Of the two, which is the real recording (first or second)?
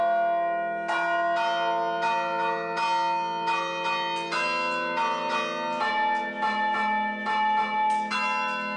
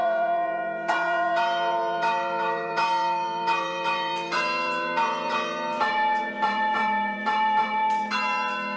first